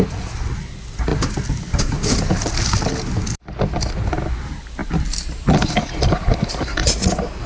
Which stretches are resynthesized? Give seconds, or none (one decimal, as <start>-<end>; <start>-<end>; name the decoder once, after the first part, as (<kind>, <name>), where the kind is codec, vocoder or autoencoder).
none